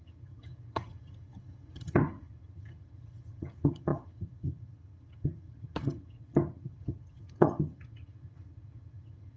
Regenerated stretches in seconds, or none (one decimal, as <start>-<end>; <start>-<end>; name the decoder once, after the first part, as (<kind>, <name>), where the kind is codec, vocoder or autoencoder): 0.0-9.4 (vocoder, HiFi-GAN)